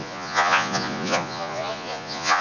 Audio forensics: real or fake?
fake